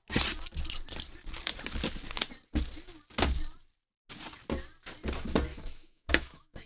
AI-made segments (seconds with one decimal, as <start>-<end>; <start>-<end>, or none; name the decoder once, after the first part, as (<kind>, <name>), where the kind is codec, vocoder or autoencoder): 5.5-6.7 (autoencoder, DAC-VAE)

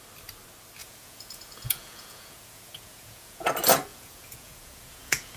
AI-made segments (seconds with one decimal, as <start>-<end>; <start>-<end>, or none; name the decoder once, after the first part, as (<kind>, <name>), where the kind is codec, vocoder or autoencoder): 0.8-3.5 (vocoder, Vocos); 3.9-5.4

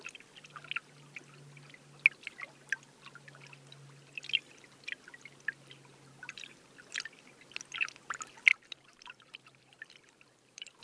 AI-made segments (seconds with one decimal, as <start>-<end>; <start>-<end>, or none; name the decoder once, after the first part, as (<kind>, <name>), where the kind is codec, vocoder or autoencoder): 8.5-10.8 (vocoder, BigVGAN v2)

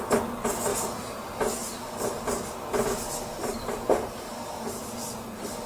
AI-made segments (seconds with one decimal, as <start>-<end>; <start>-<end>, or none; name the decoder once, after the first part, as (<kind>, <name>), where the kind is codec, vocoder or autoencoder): 0.7-2.6 (vocoder, BigVGAN v2); 3.4-4.7

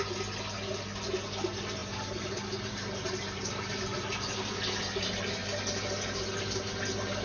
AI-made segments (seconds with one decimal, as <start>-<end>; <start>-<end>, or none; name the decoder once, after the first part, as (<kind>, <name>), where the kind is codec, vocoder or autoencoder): 1.8-4.6 (vocoder, BigVGAN v2)